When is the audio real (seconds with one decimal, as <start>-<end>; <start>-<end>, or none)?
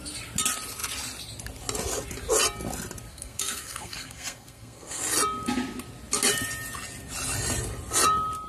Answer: 0.0-3.1; 5.0-8.5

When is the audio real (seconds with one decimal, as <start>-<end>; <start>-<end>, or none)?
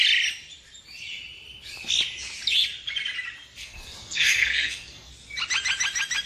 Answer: 0.0-3.6; 5.1-6.3